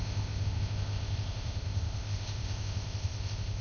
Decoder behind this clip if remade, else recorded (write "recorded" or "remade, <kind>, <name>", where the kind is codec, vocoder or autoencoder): remade, codec, ZipCodec